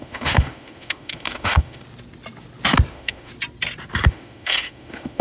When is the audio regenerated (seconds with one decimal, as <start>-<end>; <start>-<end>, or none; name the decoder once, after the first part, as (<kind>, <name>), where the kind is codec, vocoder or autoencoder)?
0.0-1.8 (autoencoder, DAC-VAE); 2.9-3.3; 4.1-5.2